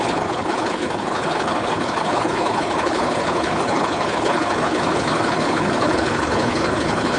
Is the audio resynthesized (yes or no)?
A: yes